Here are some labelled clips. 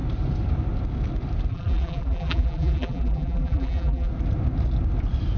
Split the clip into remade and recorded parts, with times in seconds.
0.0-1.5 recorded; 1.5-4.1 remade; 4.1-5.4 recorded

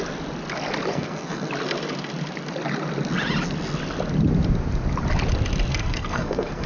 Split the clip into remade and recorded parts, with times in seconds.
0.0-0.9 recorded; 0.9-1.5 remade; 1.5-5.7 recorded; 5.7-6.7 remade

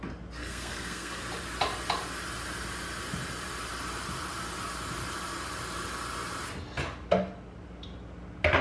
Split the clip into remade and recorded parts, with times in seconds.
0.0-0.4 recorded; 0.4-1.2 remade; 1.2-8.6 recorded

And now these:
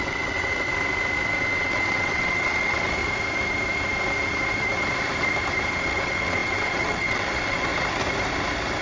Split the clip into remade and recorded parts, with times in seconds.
0.0-0.7 remade; 0.7-1.4 recorded; 1.4-3.0 remade; 3.0-5.7 recorded; 5.7-7.7 remade; 7.7-8.8 recorded

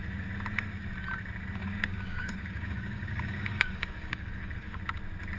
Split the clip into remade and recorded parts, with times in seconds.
0.0-1.6 recorded; 1.6-4.8 remade; 4.8-5.4 recorded

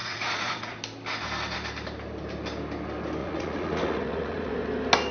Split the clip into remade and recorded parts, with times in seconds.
0.0-0.8 remade; 0.8-3.2 recorded; 3.2-4.5 remade; 4.5-5.1 recorded

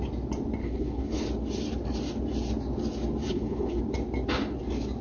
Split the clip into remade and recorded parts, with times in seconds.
0.0-0.6 recorded; 0.6-1.3 remade; 1.3-3.2 recorded; 3.2-3.8 remade; 3.8-5.0 recorded

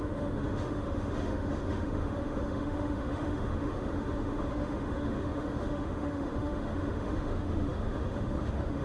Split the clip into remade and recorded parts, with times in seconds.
0.0-8.8 remade